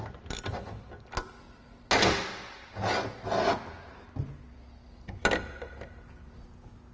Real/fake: real